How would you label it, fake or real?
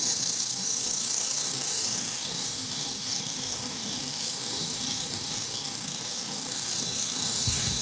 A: fake